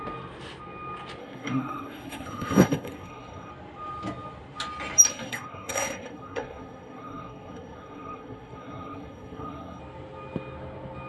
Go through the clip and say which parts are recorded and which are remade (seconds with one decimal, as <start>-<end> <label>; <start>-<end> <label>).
0.0-1.2 recorded; 1.2-3.5 remade; 3.5-5.1 recorded; 5.1-9.8 remade; 9.8-11.1 recorded